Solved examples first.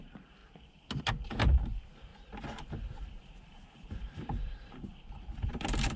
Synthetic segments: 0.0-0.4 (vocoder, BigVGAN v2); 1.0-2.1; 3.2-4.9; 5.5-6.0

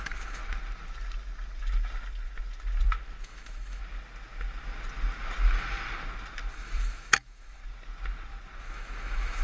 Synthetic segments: 0.0-0.4 (autoencoder, DAC-VAE); 3.2-3.8; 6.5-7.6; 8.6-9.4